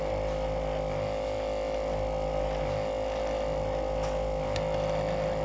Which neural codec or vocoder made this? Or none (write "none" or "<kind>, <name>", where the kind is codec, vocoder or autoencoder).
none